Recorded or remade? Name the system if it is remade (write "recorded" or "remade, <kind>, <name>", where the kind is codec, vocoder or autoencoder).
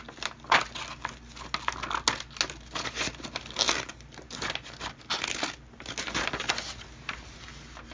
recorded